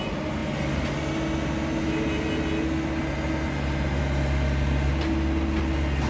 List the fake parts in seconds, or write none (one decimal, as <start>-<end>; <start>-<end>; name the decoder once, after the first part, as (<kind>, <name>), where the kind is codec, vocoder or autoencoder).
none